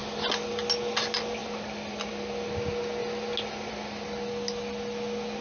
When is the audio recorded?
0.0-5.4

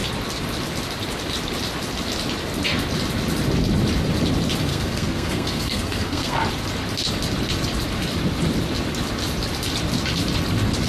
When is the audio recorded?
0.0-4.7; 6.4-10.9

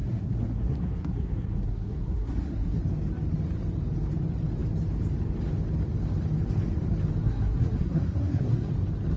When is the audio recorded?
2.8-7.2; 8.7-9.2

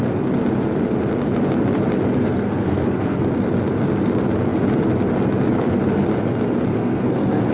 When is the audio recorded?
0.0-2.2; 3.2-6.7

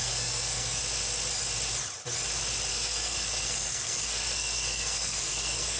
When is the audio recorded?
0.8-2.7

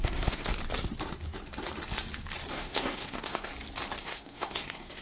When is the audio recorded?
0.5-2.5; 3.5-4.0